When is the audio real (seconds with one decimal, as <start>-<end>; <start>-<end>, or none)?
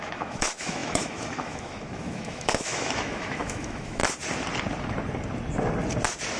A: 4.0-6.4